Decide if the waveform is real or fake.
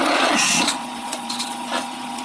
fake